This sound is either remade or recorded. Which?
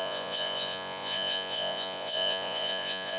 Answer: remade